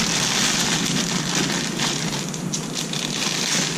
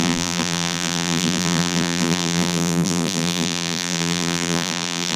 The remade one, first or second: second